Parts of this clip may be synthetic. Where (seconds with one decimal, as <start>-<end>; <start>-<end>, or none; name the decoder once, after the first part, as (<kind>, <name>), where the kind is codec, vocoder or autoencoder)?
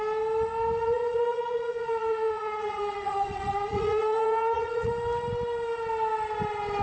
0.8-4.9 (vocoder, Vocos)